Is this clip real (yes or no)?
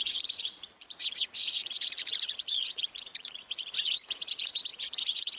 no